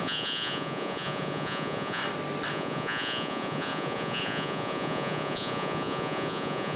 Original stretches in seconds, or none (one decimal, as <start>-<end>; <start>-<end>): 2.0-2.5